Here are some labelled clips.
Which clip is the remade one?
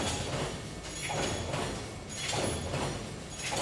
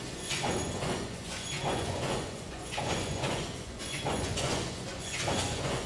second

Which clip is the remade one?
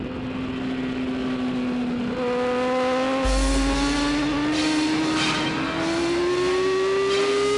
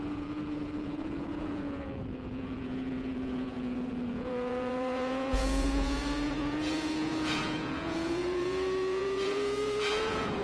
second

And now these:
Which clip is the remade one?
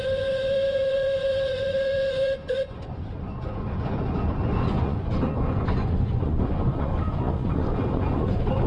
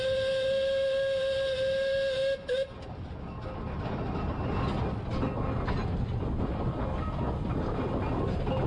first